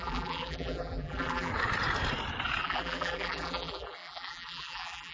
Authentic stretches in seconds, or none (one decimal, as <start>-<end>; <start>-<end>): 1.5-2.6